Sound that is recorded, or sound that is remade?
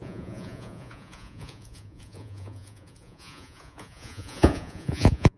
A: remade